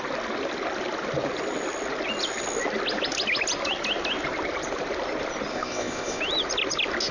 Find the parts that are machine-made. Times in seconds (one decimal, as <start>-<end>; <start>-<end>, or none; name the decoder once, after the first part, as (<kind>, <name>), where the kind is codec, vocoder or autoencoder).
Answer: 5.5-6.2 (codec, ZipCodec)